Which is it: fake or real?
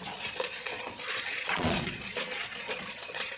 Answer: fake